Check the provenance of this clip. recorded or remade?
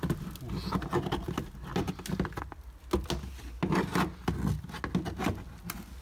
recorded